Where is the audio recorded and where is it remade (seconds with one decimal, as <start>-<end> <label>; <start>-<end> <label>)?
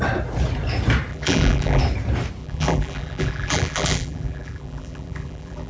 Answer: 0.0-1.1 recorded; 1.1-1.8 remade; 1.8-2.4 recorded; 2.4-5.7 remade